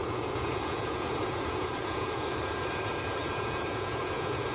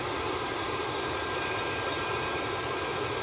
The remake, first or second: first